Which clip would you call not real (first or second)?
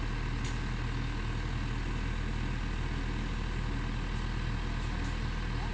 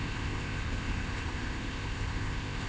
second